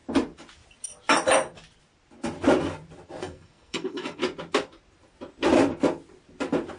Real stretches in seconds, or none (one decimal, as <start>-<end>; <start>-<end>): 0.0-3.2; 4.2-6.8